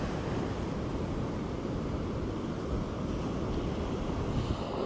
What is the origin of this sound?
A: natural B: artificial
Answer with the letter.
A